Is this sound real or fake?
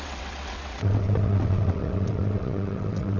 fake